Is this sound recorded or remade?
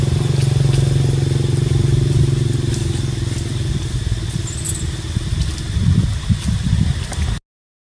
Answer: recorded